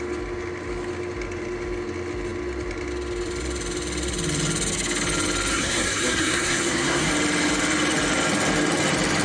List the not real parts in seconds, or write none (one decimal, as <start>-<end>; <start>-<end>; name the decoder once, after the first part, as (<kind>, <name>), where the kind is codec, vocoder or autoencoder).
5.5-7.1 (codec, SNAC)